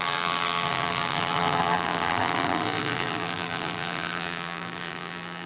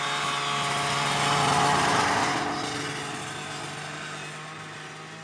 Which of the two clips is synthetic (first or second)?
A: first